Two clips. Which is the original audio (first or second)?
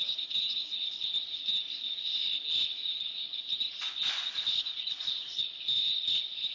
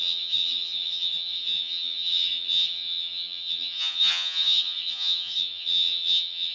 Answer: first